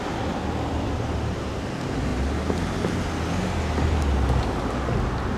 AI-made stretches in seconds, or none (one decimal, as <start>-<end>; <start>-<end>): none